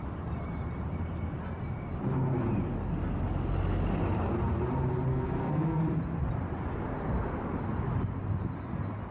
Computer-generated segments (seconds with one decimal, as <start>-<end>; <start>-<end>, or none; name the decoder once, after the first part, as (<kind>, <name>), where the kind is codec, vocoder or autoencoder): 5.1-5.8 (codec, SNAC)